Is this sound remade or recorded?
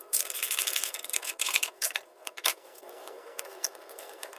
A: remade